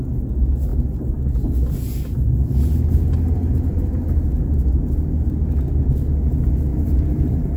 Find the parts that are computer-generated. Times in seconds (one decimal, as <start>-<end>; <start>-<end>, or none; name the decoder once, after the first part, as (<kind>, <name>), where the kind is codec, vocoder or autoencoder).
6.7-7.6 (vocoder, BigVGAN v2)